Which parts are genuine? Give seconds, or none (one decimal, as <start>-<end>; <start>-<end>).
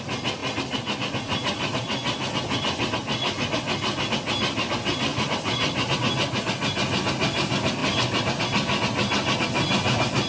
0.0-5.1; 6.0-7.8; 8.4-10.3